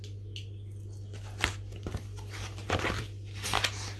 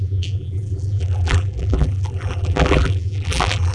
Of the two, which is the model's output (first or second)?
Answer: second